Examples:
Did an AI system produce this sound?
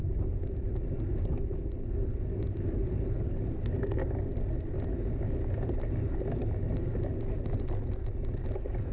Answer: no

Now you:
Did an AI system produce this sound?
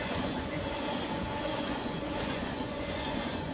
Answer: yes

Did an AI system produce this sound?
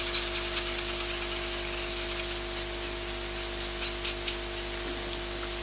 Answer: no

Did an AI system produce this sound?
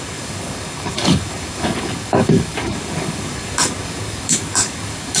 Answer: yes